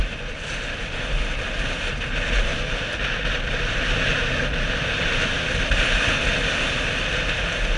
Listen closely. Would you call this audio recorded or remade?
recorded